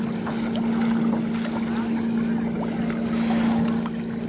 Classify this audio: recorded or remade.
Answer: recorded